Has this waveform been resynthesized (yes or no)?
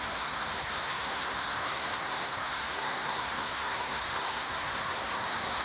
yes